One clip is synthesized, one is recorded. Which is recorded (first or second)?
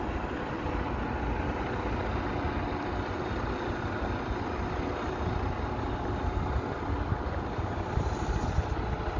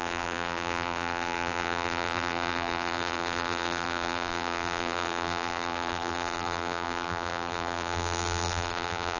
first